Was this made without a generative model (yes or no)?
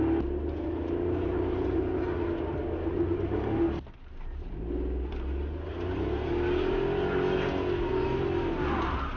yes